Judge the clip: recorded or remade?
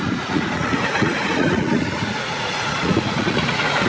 remade